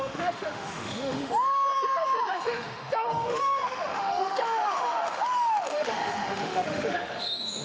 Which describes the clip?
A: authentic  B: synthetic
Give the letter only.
B